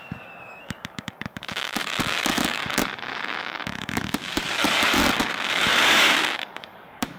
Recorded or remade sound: remade